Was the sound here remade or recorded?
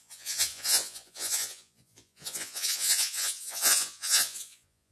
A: remade